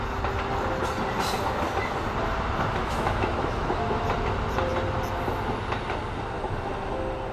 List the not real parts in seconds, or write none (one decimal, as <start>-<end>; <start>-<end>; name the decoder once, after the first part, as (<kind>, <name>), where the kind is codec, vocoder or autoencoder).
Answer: 2.8-4.0 (autoencoder, DAC-VAE)